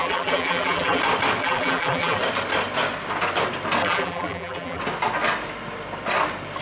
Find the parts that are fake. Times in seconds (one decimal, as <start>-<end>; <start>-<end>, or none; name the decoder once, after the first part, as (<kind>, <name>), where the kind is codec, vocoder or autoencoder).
0.0-1.0 (vocoder, BigVGAN v2); 1.4-2.2; 3.8-4.8